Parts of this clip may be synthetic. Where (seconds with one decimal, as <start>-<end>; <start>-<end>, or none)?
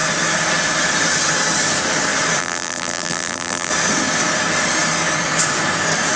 2.4-3.7